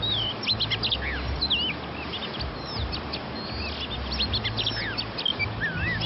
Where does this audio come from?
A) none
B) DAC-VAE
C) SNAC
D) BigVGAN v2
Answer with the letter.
A